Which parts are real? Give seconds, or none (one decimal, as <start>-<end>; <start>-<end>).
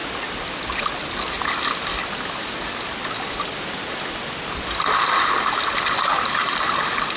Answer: 0.0-7.2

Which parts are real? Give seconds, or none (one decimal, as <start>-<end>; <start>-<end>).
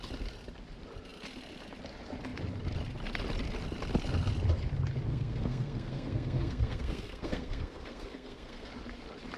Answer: 0.0-5.1; 8.7-9.4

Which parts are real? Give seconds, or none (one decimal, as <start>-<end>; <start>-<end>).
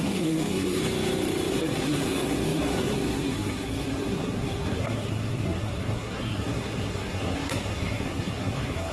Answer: 0.8-1.5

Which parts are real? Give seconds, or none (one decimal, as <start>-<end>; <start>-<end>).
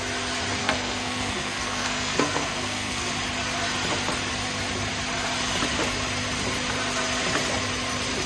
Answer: 0.0-0.6; 3.1-8.3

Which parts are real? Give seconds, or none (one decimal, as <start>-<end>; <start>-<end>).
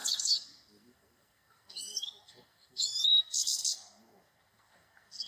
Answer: none